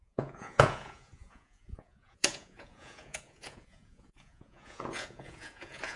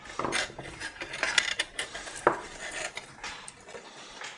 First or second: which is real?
second